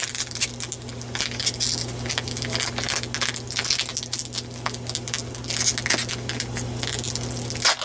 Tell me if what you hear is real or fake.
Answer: real